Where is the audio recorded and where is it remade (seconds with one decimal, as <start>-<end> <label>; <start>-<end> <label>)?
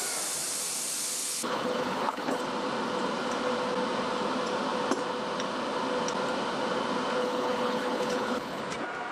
0.0-1.2 recorded; 1.2-2.4 remade; 2.4-7.2 recorded; 7.2-8.6 remade; 8.6-9.1 recorded